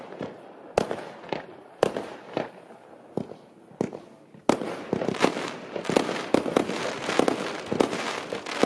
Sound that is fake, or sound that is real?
real